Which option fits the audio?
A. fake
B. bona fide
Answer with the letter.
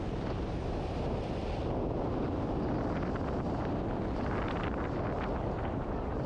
B